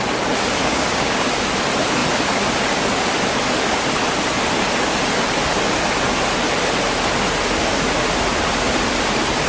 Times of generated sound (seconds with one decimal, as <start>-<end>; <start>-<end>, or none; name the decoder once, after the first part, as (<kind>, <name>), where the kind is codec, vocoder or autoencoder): 0.6-1.3 (codec, DAC)